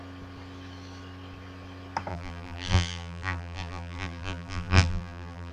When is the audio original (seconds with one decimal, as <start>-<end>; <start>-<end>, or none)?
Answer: 0.0-2.1